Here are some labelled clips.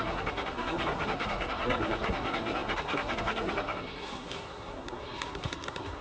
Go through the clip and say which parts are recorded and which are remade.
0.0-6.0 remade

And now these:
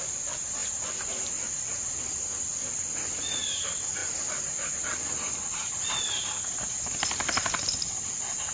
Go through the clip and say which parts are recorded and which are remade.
0.0-8.5 recorded

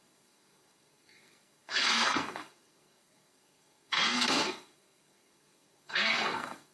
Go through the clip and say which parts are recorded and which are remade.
0.0-6.7 remade

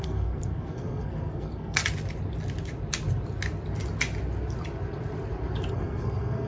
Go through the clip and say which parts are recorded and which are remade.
0.0-1.8 remade; 1.8-5.7 recorded; 5.7-6.5 remade

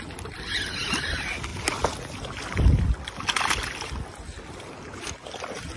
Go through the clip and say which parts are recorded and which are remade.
0.0-5.8 recorded

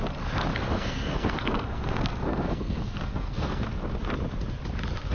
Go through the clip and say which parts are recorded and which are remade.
0.0-0.5 recorded; 0.5-3.6 remade; 3.6-5.1 recorded

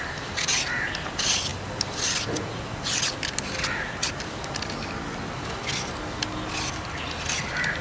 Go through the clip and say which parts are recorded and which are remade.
0.0-7.8 recorded

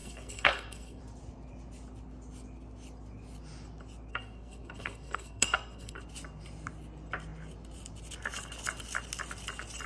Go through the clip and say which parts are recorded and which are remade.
0.0-1.0 remade; 1.0-4.1 recorded; 4.1-6.0 remade; 6.0-9.9 recorded